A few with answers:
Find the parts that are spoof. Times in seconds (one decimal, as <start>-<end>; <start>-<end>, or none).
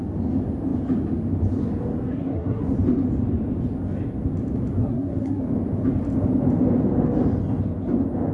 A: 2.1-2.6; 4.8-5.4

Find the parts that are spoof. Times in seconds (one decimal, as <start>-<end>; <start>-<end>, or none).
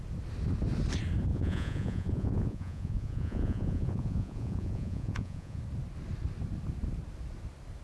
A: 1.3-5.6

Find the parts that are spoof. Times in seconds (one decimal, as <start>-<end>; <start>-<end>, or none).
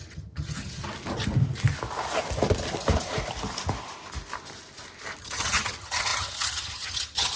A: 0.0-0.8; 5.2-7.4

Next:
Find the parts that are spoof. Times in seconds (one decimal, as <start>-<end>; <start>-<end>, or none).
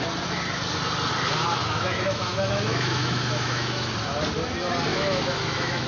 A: 1.6-3.9; 4.9-5.9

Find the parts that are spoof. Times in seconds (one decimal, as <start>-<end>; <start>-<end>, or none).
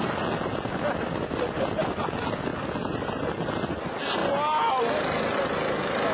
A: none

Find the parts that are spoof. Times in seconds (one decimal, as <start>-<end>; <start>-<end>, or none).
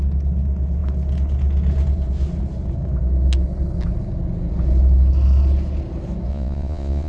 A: 6.3-7.1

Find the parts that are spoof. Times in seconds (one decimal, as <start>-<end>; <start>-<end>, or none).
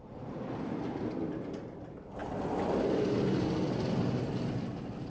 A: none